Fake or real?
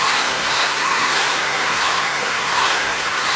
fake